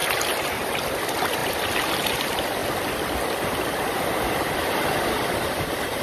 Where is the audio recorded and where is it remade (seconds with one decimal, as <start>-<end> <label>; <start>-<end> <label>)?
0.0-6.0 recorded